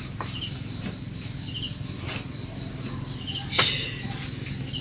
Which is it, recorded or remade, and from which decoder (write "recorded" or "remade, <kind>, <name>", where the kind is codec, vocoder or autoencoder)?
recorded